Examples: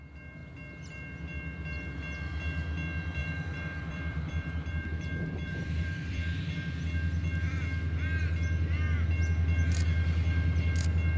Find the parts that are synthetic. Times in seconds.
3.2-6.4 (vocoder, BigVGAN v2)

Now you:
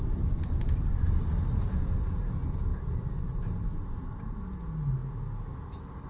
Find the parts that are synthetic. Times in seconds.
2.7-3.4 (vocoder, BigVGAN v2)

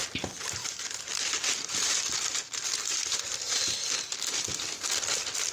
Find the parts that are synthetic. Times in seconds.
0.6-3.9 (vocoder, BigVGAN v2)

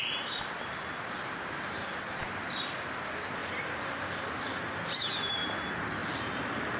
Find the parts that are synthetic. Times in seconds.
3.4-4.2 (vocoder, BigVGAN v2); 6.0-6.8

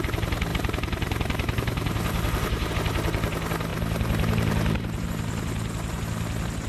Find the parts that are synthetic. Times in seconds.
0.5-2.7 (vocoder, BigVGAN v2); 3.7-5.1